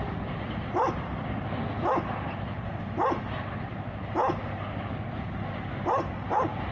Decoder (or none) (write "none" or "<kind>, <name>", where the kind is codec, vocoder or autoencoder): none